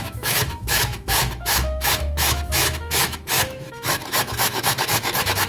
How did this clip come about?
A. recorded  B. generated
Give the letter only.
B